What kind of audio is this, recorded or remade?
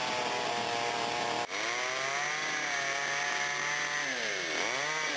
recorded